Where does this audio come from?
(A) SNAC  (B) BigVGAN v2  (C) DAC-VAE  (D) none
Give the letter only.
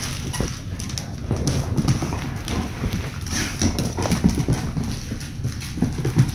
D